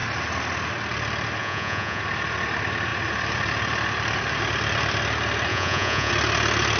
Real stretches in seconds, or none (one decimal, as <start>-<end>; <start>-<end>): 0.0-1.4; 2.0-5.5; 6.1-6.8